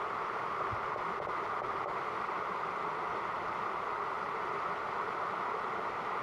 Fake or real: real